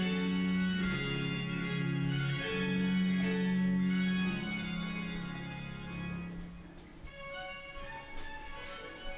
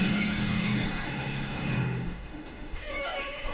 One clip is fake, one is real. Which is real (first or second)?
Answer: first